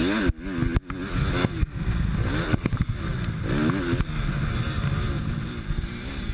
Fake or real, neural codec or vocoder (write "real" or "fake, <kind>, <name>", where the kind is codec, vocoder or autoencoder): real